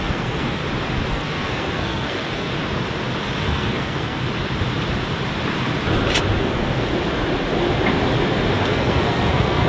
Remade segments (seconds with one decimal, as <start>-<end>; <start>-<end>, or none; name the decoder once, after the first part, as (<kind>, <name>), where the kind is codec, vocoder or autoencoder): 0.0-0.6 (codec, SNAC); 1.1-2.5; 3.4-4.2; 6.4-6.9; 8.6-9.7